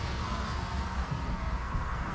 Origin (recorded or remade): remade